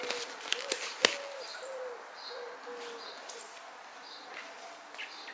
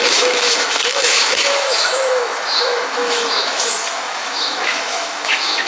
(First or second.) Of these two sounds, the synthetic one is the second